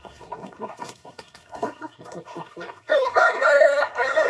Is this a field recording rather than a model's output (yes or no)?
no